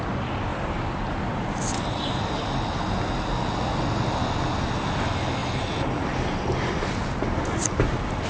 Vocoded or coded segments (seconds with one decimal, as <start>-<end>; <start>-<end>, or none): 0.5-2.2; 5.4-6.1